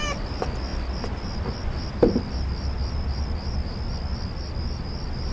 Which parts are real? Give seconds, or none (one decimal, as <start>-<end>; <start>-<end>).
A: 0.0-5.3